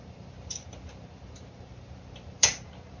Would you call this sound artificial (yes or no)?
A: yes